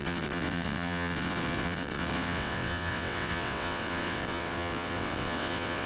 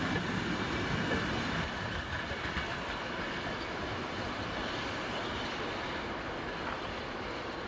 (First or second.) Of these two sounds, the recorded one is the second